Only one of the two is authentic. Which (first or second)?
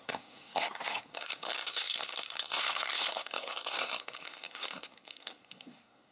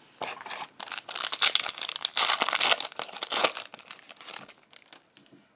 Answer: second